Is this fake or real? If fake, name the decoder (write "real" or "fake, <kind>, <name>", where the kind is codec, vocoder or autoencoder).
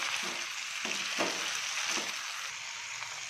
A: real